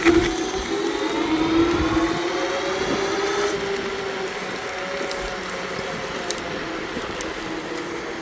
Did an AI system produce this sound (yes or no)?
no